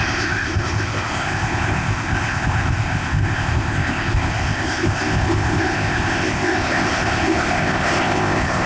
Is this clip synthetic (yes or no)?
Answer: yes